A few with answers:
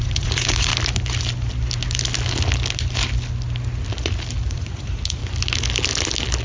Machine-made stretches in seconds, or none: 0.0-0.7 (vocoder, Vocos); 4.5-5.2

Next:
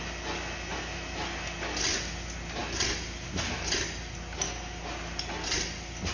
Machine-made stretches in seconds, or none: none

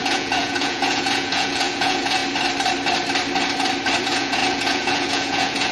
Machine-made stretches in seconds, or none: 0.0-2.2 (vocoder, Vocos); 4.0-5.7

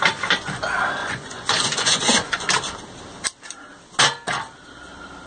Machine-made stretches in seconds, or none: 1.0-2.5 (vocoder, Vocos)

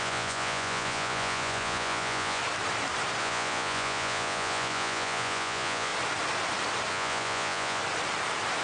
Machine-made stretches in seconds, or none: 0.0-2.4 (vocoder, Vocos); 3.2-5.9; 6.9-7.8